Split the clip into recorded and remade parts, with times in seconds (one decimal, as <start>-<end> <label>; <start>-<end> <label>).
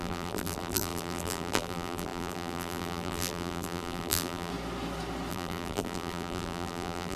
0.0-4.5 remade; 4.5-5.3 recorded; 5.3-7.2 remade